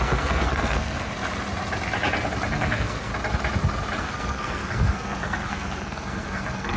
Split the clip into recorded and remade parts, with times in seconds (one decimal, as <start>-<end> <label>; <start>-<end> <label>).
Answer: 0.0-1.1 remade; 1.1-2.5 recorded; 2.5-3.1 remade; 3.1-4.0 recorded; 4.0-6.8 remade